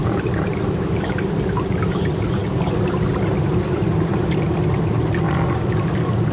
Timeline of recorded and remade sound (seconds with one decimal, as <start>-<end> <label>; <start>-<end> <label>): 0.0-0.5 remade; 0.5-2.4 recorded; 2.4-4.4 remade; 4.4-6.3 recorded